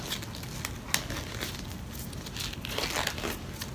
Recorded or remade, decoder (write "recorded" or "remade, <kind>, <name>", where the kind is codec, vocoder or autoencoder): recorded